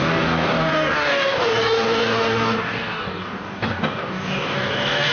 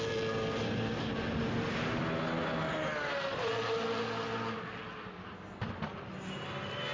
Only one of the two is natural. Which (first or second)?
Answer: second